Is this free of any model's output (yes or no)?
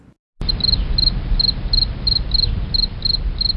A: yes